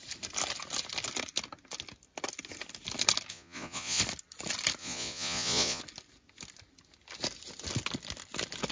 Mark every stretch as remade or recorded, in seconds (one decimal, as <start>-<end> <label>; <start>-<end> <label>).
0.0-3.3 recorded; 3.3-4.0 remade; 4.0-4.8 recorded; 4.8-5.8 remade; 5.8-8.7 recorded

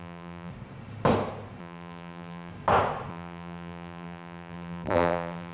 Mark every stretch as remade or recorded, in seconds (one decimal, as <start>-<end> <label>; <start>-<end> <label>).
0.0-0.5 remade; 0.5-1.6 recorded; 1.6-2.5 remade; 2.5-3.1 recorded; 3.1-5.5 remade

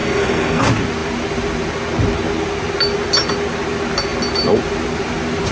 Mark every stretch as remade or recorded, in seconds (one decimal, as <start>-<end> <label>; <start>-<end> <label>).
0.0-0.6 remade; 0.6-5.5 recorded